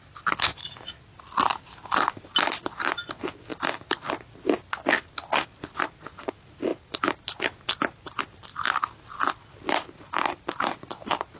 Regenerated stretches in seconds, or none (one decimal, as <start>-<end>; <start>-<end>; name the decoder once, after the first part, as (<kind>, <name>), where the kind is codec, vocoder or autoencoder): 3.5-4.2 (vocoder, BigVGAN v2); 6.7-7.4